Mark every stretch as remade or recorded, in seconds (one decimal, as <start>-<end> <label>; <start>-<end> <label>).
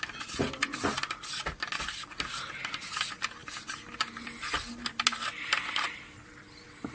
0.0-6.9 recorded